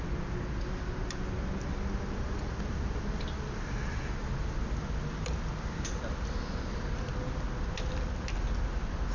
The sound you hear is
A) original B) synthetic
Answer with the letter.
A